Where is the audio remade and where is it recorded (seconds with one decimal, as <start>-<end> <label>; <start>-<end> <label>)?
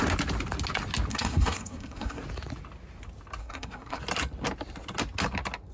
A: 0.0-1.1 recorded; 1.1-2.2 remade; 2.2-3.4 recorded; 3.4-4.0 remade; 4.0-5.7 recorded